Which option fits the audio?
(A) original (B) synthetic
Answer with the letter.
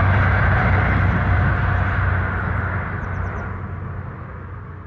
A